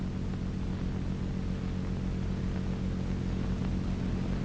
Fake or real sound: real